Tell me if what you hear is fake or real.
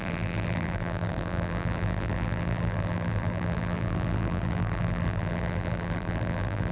fake